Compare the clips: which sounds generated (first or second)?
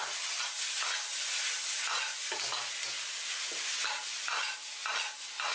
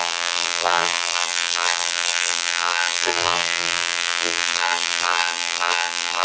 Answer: second